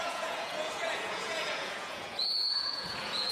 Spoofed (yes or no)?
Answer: yes